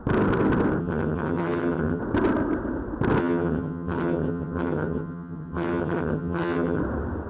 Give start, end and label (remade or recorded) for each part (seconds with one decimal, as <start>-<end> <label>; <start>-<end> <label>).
0.0-0.8 recorded; 0.8-2.0 remade; 2.0-3.2 recorded; 3.2-6.8 remade; 6.8-7.3 recorded